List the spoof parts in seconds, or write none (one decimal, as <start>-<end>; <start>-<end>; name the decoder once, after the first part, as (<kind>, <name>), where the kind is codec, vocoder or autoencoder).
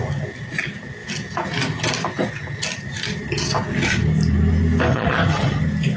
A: 4.9-5.6 (vocoder, HiFi-GAN)